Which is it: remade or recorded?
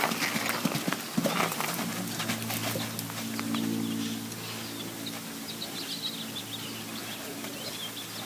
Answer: recorded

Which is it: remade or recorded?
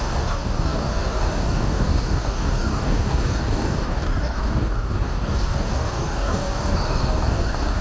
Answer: remade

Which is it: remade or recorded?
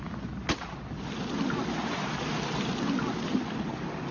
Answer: recorded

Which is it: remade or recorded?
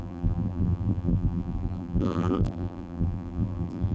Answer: remade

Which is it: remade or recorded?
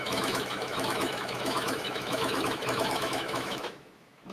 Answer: remade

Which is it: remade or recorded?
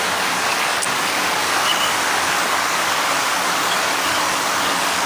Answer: remade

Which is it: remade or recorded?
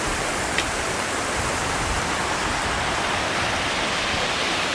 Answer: recorded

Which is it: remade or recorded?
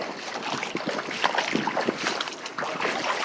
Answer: recorded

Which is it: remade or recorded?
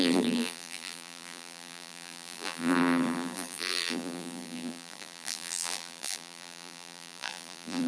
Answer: remade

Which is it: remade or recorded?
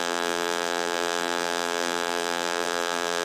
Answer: remade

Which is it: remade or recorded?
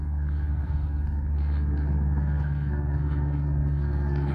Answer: remade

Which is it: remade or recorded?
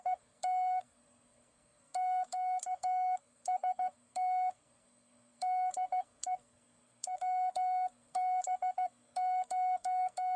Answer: remade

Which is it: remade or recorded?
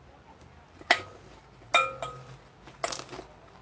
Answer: recorded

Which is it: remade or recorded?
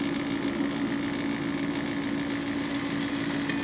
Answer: recorded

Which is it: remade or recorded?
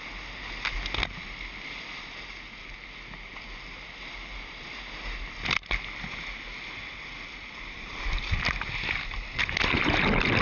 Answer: recorded